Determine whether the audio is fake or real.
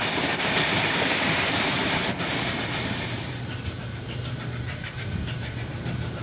fake